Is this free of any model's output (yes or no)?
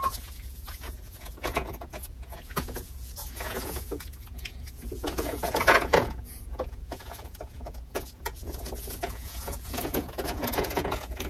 no